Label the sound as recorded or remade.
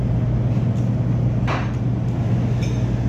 recorded